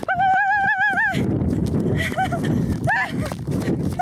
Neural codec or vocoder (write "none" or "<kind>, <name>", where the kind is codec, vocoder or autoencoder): none